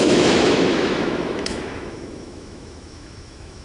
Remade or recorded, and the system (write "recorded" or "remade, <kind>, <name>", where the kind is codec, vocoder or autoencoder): remade, autoencoder, DAC-VAE